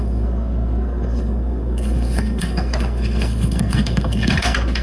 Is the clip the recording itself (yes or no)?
no